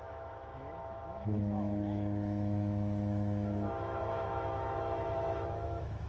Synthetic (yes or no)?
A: yes